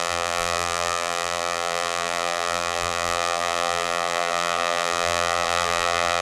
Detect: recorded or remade remade